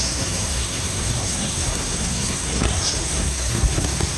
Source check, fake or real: fake